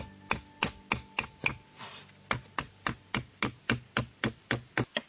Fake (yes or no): no